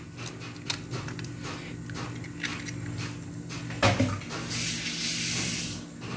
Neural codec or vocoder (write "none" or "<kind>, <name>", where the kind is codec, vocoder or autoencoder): none